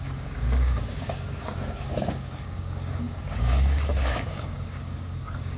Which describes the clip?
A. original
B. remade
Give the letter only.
B